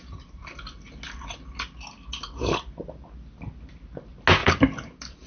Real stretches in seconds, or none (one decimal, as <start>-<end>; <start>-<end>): 0.0-5.3